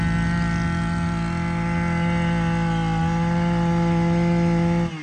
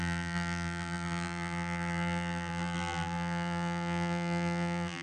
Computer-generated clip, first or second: second